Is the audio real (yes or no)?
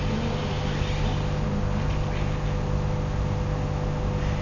yes